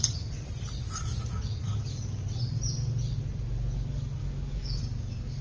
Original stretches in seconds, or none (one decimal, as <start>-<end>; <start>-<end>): 0.0-4.2; 4.8-5.4